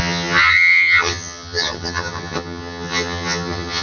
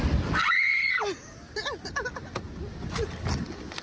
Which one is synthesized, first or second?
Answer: first